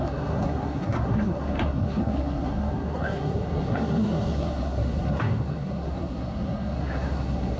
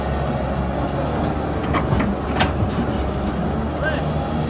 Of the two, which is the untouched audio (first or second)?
second